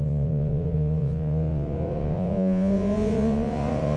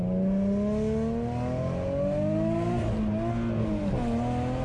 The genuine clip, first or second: second